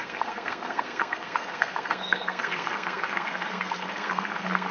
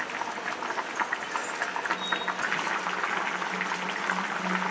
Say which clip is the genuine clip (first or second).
second